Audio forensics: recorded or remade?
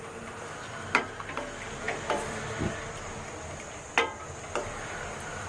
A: remade